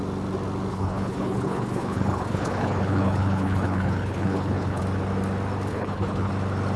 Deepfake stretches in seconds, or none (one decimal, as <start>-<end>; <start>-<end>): 0.7-4.8; 5.7-6.3